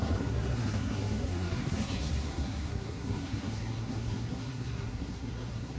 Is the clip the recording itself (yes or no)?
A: no